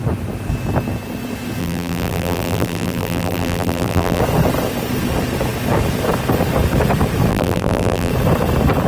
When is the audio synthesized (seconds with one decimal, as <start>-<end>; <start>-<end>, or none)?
1.6-4.2; 7.3-8.1